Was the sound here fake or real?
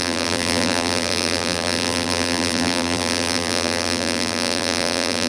fake